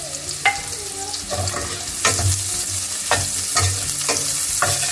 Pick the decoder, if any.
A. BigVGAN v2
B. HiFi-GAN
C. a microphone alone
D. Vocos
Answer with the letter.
C